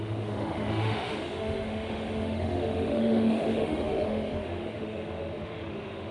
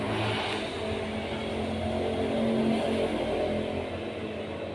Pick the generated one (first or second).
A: first